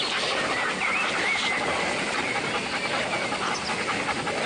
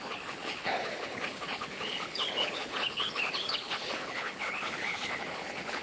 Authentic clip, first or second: first